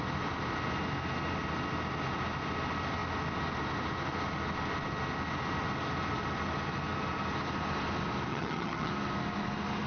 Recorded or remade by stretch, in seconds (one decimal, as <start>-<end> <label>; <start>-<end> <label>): 0.0-8.3 recorded; 8.3-8.9 remade; 8.9-9.9 recorded